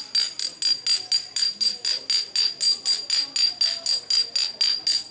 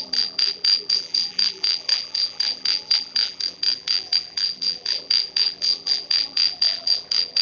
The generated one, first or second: second